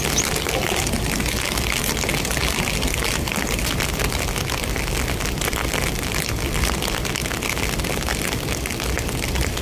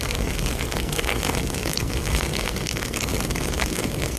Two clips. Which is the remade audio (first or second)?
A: second